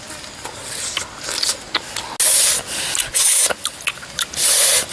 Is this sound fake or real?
real